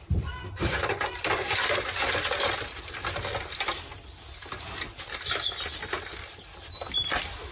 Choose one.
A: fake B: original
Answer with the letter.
B